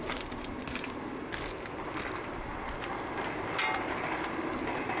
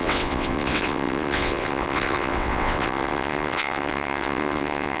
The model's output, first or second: second